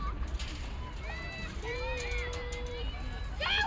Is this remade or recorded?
recorded